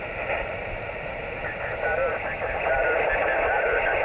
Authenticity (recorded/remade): remade